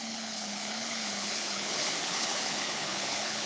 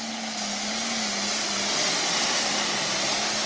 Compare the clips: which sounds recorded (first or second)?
second